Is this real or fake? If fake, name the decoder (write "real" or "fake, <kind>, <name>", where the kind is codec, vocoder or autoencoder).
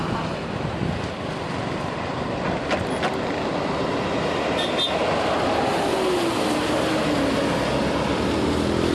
real